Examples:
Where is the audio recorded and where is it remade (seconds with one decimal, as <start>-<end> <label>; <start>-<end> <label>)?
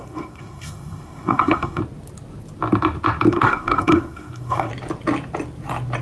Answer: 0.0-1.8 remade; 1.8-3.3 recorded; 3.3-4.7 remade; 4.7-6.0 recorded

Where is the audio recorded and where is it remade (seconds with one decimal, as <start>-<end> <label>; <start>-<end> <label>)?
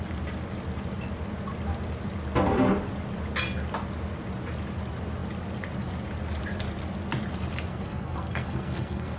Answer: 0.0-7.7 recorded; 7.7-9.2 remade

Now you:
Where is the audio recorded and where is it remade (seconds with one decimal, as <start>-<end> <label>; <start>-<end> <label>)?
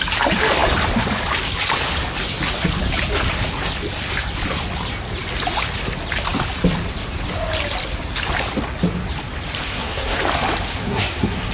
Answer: 0.0-9.6 recorded; 9.6-10.2 remade; 10.2-10.7 recorded; 10.7-11.5 remade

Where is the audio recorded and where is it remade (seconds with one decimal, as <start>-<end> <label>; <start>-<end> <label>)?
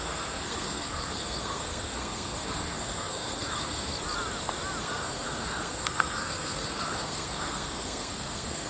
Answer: 0.0-3.9 remade; 3.9-4.8 recorded; 4.8-8.7 remade